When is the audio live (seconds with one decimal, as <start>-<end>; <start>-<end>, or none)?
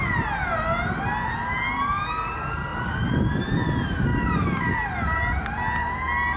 0.0-2.7; 3.3-4.1; 4.9-6.4